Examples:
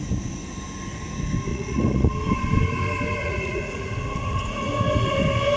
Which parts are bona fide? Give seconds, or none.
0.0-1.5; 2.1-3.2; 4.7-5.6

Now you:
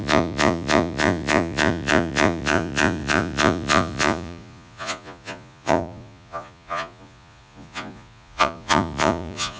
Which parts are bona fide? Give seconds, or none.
none

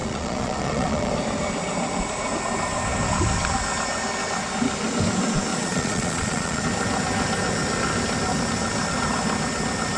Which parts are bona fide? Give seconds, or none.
1.1-5.5; 6.6-10.0

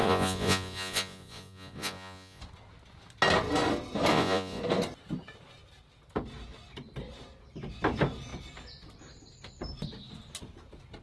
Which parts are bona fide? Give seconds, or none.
2.4-4.1; 4.6-11.0

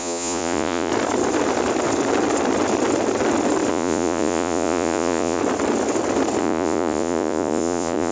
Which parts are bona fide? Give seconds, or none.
0.9-3.7; 5.4-6.4

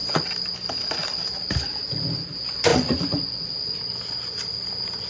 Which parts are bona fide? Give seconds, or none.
0.0-2.7; 3.4-5.1

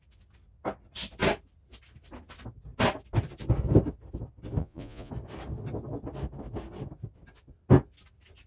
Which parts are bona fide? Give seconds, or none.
0.0-4.6; 5.1-8.5